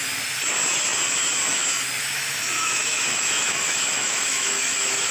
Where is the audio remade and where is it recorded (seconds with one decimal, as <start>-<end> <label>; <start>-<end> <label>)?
0.0-2.0 recorded; 2.0-5.1 remade